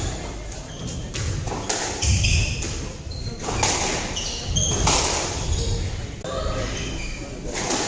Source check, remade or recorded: recorded